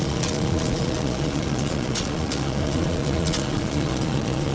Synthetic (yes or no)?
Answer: yes